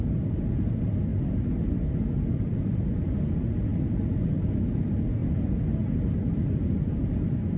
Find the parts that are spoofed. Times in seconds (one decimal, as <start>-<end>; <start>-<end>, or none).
none